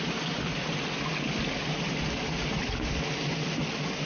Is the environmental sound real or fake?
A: real